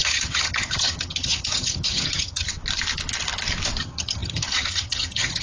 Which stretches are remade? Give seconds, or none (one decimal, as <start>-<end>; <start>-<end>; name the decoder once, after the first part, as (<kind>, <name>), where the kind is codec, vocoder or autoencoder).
0.0-2.5 (vocoder, HiFi-GAN); 3.8-5.4